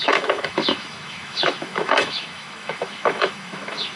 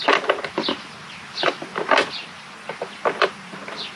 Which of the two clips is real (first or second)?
second